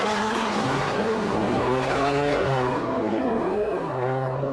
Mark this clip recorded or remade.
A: remade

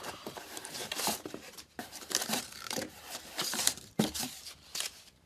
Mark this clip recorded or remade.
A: remade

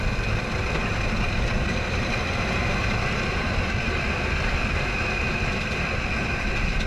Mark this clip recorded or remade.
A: recorded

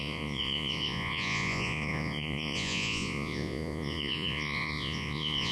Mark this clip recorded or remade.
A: remade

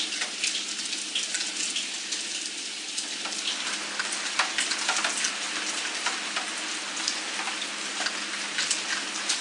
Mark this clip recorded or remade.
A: recorded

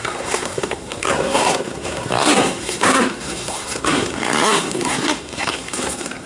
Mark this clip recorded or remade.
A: remade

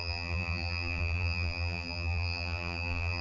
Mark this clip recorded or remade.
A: remade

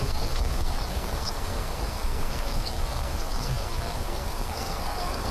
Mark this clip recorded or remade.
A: remade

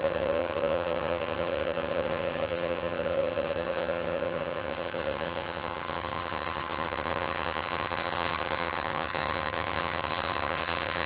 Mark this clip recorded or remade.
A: remade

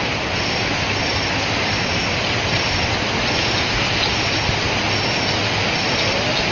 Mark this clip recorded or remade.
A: recorded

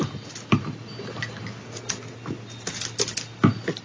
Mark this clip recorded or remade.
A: recorded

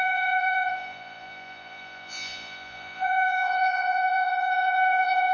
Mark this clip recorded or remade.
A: remade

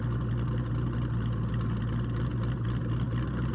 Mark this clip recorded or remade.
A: recorded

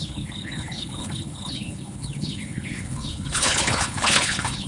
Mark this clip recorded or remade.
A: remade